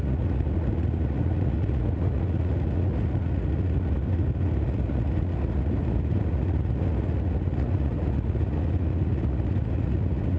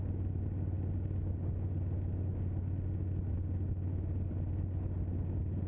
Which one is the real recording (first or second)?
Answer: second